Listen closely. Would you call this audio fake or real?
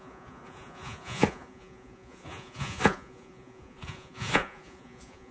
fake